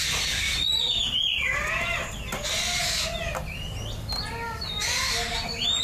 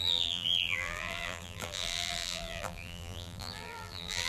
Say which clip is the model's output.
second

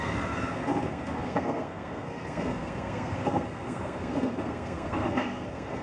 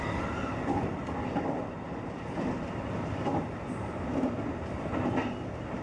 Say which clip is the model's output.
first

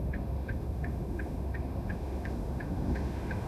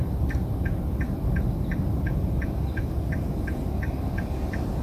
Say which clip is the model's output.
first